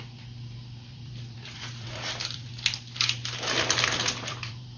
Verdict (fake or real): fake